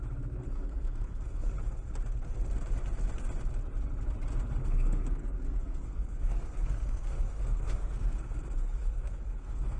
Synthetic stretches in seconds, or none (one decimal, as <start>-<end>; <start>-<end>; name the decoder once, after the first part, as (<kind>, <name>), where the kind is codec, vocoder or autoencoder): 0.4-1.5 (codec, SNAC); 4.6-9.8